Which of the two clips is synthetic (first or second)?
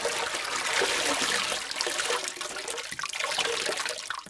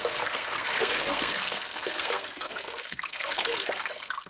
second